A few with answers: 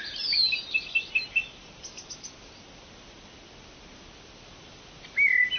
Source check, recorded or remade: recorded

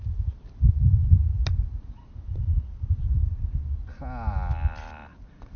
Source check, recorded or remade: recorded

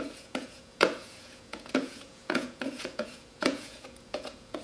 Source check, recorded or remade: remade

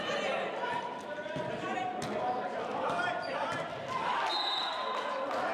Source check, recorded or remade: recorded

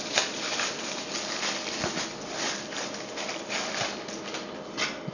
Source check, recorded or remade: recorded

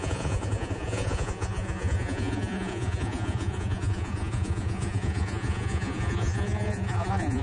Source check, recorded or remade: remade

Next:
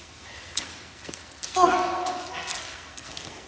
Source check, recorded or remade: remade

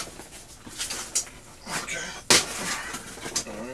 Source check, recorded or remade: recorded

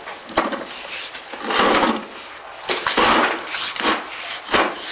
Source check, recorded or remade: recorded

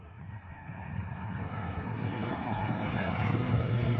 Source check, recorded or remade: remade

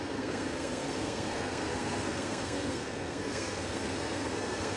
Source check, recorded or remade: remade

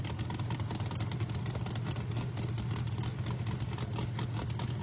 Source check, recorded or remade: recorded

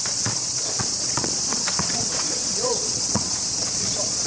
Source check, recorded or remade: remade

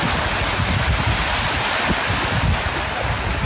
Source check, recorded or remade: recorded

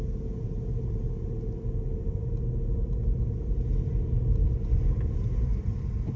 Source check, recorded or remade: recorded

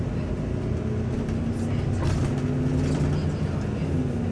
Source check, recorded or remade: recorded